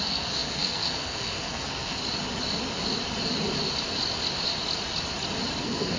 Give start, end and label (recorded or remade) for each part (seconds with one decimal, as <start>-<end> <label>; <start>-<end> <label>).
0.0-2.0 remade; 2.0-5.6 recorded; 5.6-6.0 remade